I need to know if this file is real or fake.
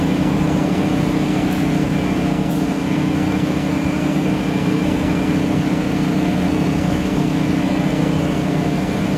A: fake